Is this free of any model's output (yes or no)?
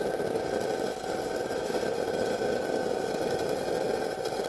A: yes